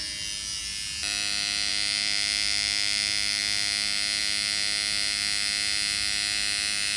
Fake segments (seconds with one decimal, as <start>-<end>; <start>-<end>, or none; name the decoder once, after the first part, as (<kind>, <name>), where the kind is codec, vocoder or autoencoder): none